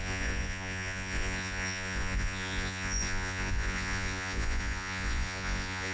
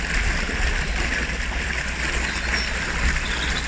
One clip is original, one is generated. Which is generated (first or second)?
first